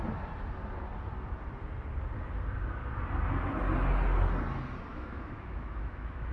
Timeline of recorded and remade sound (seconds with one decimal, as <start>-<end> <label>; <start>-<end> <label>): 0.0-4.9 recorded; 4.9-6.3 remade